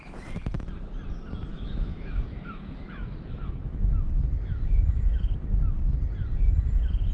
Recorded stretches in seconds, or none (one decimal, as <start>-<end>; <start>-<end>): 0.0-1.5; 5.2-7.1